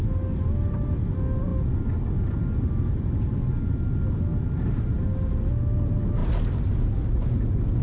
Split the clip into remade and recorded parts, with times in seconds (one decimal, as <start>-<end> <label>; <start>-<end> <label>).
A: 0.0-7.8 recorded